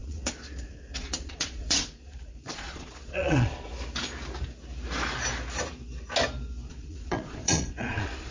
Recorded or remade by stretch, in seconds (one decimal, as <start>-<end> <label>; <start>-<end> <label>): 0.0-3.7 remade; 3.7-6.7 recorded; 6.7-8.3 remade